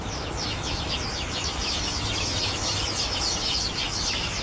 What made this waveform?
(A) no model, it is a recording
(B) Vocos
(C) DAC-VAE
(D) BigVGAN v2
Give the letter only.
C